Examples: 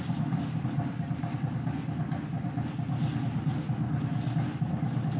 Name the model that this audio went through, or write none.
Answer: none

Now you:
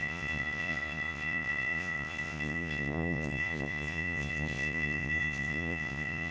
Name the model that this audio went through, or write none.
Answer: vocoder, Vocos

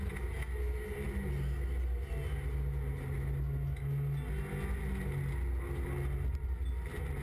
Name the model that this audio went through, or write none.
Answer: none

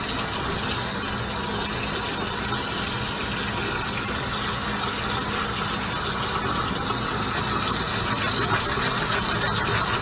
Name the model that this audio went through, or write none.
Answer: none